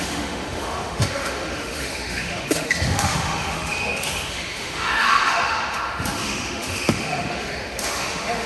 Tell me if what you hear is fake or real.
fake